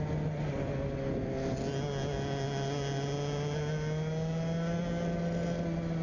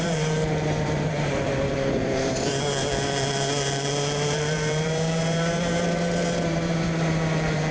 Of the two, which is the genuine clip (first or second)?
first